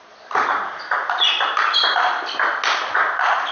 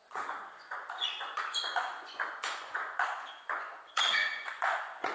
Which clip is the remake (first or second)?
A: second